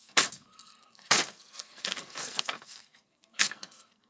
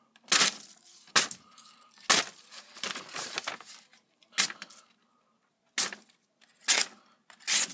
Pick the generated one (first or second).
first